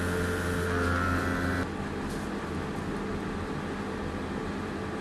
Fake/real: real